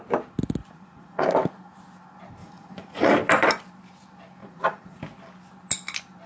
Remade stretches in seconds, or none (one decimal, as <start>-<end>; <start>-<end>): 0.6-1.2; 2.4-3.1; 4.4-5.0